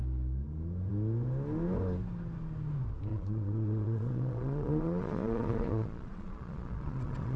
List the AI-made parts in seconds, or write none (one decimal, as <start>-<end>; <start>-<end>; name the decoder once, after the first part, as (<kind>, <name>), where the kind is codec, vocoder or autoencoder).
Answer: 3.1-7.4 (vocoder, Vocos)